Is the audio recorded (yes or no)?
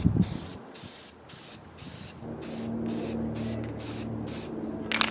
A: yes